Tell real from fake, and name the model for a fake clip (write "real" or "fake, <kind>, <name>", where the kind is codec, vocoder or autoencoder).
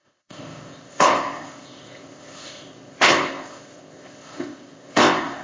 fake, codec, ZipCodec